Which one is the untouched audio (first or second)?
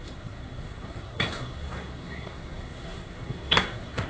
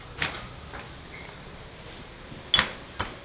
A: second